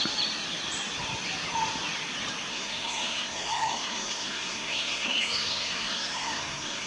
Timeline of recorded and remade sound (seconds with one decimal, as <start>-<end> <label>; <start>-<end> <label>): 0.0-2.5 recorded; 2.5-6.9 remade